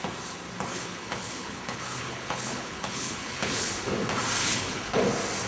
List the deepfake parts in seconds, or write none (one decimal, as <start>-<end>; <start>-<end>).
0.7-3.7; 4.4-5.0